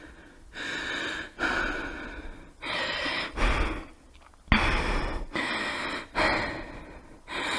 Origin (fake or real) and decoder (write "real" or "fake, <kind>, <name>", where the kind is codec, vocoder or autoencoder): real